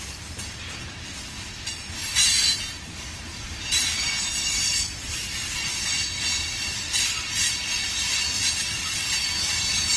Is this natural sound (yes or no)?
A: yes